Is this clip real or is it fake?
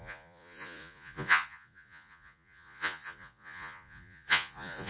fake